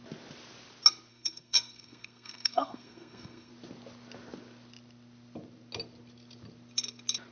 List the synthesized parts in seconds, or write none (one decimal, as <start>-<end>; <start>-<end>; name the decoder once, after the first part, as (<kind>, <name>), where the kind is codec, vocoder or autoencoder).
1.1-3.5 (codec, SNAC)